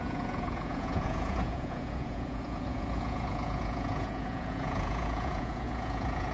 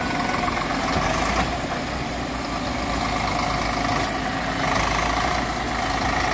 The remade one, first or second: first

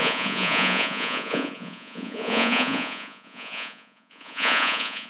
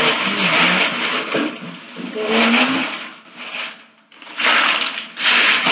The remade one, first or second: first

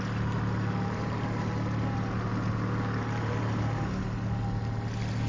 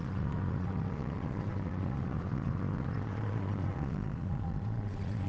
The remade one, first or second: second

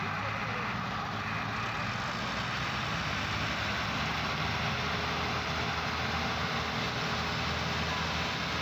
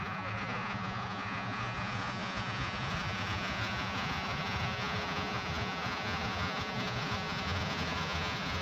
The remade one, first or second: second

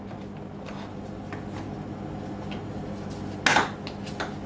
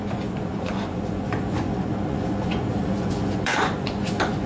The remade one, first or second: second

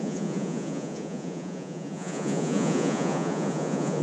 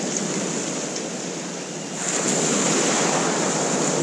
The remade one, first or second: first